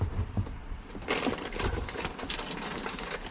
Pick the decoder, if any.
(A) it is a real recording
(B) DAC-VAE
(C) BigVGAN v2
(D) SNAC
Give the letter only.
C